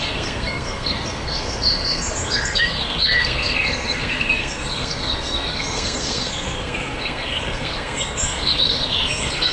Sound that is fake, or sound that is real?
fake